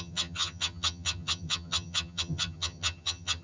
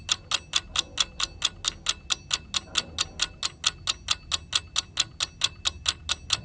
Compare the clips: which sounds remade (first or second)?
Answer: first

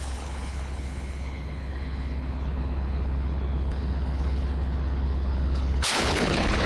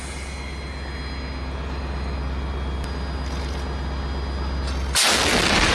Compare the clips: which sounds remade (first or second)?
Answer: first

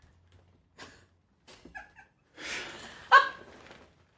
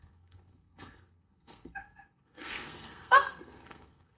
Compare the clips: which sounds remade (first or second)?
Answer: second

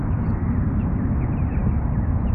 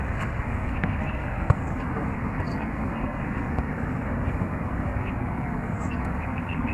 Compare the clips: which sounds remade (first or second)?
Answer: second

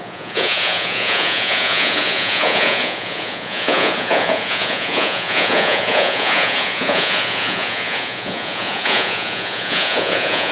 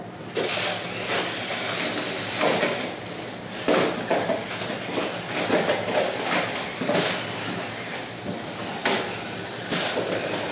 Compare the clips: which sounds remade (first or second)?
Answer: first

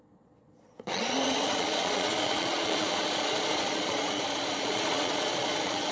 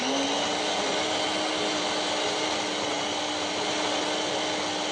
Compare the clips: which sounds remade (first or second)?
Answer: first